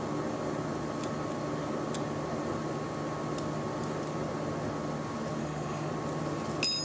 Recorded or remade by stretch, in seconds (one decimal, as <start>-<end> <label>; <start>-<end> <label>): 0.0-5.4 recorded; 5.4-5.9 remade; 5.9-6.8 recorded